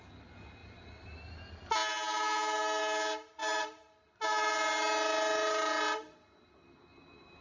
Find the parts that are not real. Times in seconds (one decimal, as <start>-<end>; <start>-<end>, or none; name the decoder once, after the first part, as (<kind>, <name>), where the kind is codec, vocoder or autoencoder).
none